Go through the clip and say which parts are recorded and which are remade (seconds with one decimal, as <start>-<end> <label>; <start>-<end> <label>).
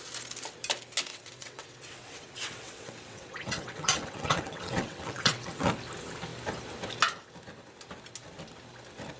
0.0-1.1 recorded; 1.1-5.7 remade; 5.7-9.2 recorded